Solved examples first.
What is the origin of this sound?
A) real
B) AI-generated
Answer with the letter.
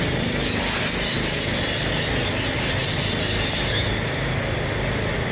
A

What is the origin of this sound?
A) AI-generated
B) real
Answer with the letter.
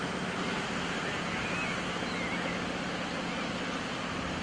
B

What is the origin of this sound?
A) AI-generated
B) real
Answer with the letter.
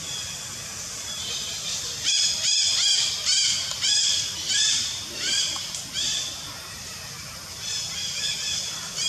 B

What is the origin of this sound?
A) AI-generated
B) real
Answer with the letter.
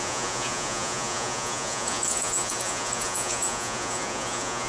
A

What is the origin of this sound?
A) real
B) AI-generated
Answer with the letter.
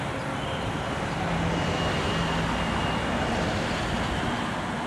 A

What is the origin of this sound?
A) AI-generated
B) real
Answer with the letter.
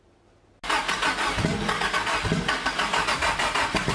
B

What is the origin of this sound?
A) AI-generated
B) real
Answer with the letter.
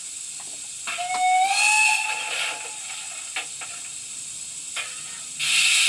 B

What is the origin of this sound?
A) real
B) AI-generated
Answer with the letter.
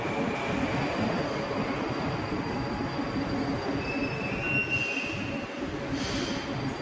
A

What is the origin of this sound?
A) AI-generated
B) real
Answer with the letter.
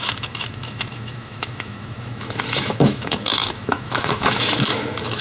A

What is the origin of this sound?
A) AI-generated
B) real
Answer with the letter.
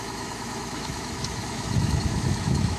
A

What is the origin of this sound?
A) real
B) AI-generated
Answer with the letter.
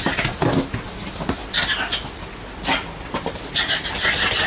A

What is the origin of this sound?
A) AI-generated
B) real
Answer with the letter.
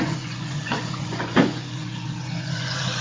A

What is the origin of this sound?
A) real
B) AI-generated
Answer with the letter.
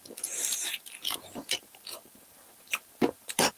B